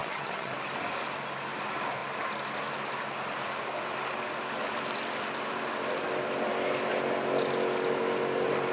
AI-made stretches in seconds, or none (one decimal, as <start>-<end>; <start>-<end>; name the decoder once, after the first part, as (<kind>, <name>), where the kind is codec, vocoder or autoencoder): 0.0-0.5 (vocoder, HiFi-GAN)

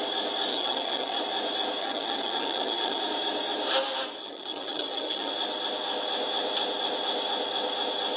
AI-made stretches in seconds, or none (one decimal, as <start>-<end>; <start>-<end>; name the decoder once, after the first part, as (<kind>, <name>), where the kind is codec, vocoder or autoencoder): 0.5-1.2 (vocoder, HiFi-GAN); 1.8-3.0; 4.2-5.3

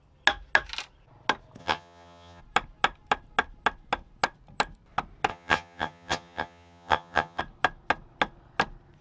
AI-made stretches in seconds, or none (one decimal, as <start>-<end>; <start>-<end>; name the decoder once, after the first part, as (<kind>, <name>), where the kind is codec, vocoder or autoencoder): 1.6-2.4 (vocoder, HiFi-GAN); 5.3-7.4

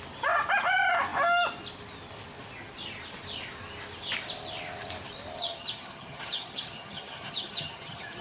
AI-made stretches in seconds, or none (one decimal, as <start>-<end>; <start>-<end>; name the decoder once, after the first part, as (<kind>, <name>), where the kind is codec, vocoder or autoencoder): 5.4-8.2 (vocoder, HiFi-GAN)

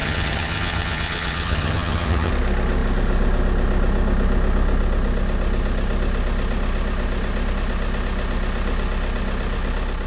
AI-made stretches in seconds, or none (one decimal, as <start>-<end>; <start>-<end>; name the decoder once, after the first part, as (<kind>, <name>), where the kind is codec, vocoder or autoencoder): 0.0-2.3 (vocoder, HiFi-GAN)

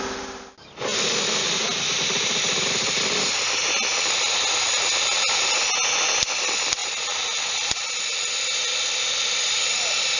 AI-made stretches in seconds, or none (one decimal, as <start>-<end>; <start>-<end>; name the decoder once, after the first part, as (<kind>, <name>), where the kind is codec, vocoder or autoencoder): none

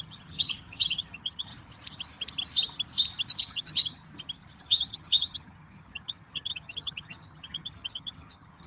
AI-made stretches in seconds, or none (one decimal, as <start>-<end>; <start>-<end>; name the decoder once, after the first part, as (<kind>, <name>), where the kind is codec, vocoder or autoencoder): 0.0-1.5 (vocoder, HiFi-GAN); 3.4-4.0; 4.6-8.7